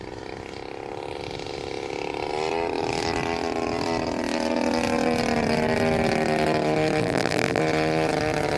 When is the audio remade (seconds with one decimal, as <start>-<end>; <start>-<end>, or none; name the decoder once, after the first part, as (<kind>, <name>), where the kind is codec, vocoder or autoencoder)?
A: 7.0-7.6 (vocoder, BigVGAN v2)